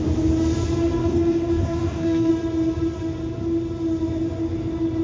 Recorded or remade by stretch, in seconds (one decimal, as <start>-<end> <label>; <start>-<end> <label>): 0.0-1.0 recorded; 1.0-2.3 remade; 2.3-5.0 recorded